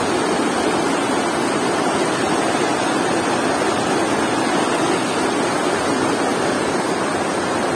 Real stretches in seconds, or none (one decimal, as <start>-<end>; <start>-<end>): 0.0-7.7